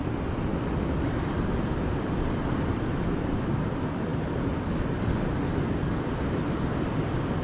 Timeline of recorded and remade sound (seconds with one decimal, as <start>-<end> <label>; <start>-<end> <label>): 0.0-4.1 recorded; 4.1-5.1 remade; 5.1-7.4 recorded